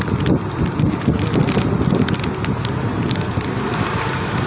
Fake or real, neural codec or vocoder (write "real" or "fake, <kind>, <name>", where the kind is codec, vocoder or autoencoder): real